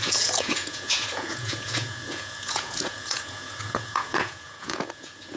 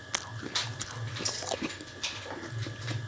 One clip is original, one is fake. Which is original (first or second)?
second